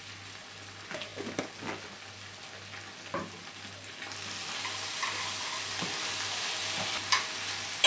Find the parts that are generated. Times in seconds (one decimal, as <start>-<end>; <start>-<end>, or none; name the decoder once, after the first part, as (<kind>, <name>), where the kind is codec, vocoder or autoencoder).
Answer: none